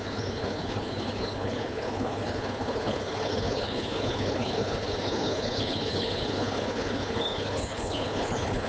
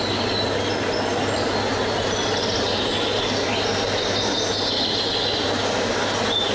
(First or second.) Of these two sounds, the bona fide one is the second